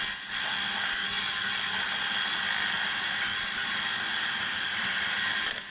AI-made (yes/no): no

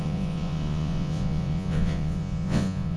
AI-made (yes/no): yes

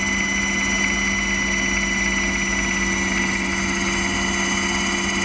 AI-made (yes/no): no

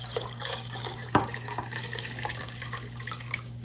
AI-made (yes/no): yes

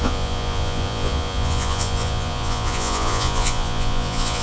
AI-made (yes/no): yes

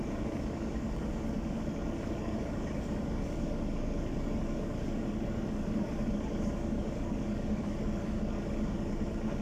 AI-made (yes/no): yes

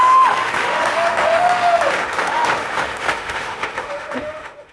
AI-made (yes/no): yes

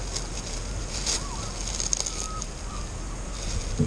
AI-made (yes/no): no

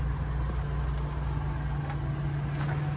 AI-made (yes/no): no